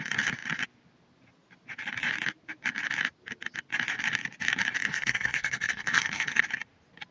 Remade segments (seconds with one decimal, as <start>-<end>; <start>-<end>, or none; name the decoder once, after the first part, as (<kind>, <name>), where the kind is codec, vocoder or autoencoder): 4.8-6.4 (codec, SNAC)